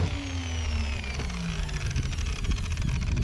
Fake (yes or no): no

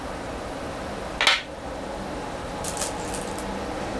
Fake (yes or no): no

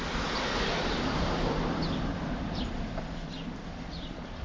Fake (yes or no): yes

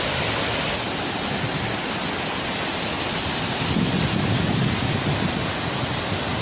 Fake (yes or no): no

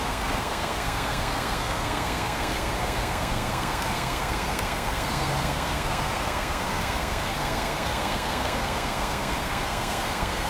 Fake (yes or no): yes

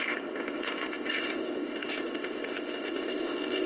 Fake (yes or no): yes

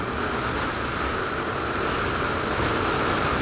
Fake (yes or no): no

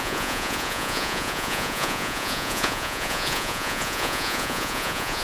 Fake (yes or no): yes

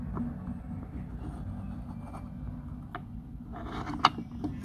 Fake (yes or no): no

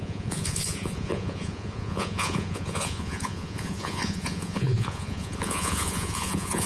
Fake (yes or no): yes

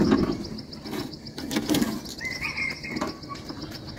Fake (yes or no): no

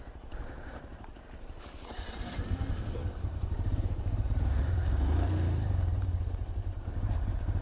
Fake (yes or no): yes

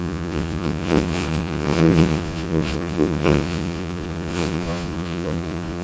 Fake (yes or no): yes